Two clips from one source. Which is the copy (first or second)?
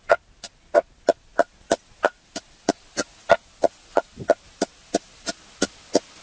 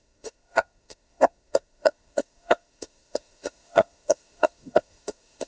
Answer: second